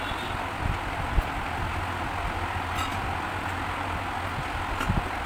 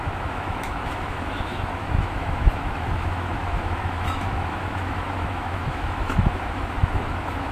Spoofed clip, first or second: second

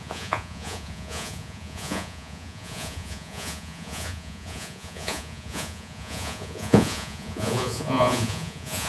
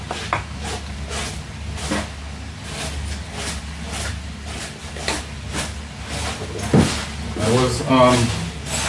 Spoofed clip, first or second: first